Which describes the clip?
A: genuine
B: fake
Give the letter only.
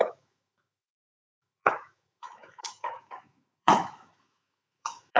B